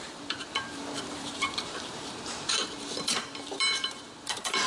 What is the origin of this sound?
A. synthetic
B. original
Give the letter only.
A